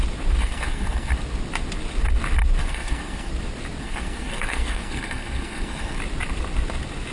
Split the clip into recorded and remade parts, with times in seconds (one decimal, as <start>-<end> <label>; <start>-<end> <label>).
0.0-0.4 recorded; 0.4-1.1 remade; 1.1-2.6 recorded; 2.6-3.3 remade; 3.3-3.8 recorded; 3.8-6.0 remade; 6.0-7.1 recorded